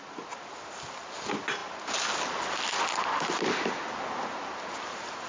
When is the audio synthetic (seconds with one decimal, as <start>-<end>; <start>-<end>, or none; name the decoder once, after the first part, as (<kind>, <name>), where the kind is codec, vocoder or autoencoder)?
none